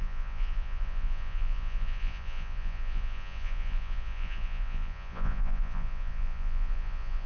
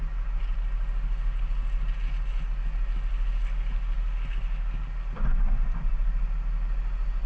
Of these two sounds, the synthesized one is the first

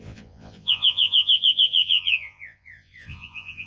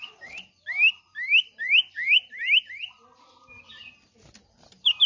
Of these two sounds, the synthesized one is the first